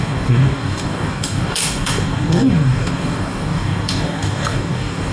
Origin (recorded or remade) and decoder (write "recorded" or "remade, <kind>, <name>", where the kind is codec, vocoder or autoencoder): remade, codec, DAC